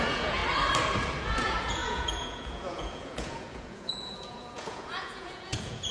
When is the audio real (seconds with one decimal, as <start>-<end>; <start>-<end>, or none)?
0.4-1.2